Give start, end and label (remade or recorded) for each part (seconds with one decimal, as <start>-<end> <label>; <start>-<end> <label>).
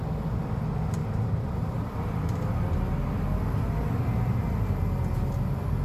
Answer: 0.0-1.0 recorded; 1.0-2.1 remade; 2.1-3.8 recorded; 3.8-4.8 remade; 4.8-5.8 recorded